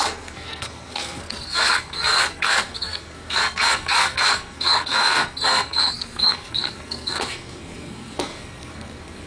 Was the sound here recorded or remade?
remade